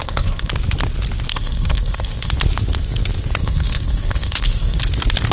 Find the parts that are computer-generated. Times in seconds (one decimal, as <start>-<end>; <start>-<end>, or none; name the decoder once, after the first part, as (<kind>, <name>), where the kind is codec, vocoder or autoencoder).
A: 0.0-0.5 (codec, SNAC); 1.3-2.3; 3.4-4.8